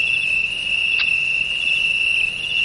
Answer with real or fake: real